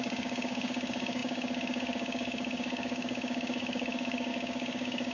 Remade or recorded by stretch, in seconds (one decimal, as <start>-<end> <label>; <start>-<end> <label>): 0.0-5.1 remade